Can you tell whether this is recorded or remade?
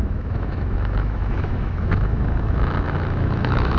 remade